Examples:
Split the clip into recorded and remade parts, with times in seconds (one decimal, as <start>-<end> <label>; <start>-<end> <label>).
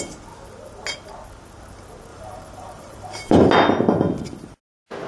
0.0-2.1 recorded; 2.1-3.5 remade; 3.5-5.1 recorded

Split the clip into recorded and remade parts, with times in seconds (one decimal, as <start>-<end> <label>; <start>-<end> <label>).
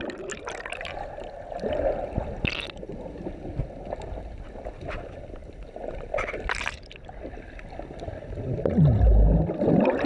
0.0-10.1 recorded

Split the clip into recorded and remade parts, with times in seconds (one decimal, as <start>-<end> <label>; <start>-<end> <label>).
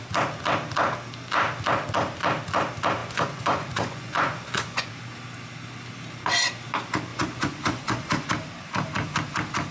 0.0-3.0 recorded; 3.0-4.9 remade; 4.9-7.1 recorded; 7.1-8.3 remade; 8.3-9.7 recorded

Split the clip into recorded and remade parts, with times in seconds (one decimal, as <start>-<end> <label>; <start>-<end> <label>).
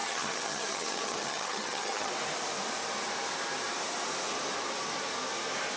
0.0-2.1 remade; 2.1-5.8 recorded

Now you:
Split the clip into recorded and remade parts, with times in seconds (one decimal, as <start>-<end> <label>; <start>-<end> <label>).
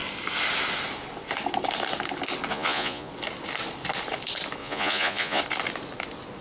0.0-2.5 recorded; 2.5-3.1 remade; 3.1-4.6 recorded; 4.6-5.4 remade; 5.4-6.4 recorded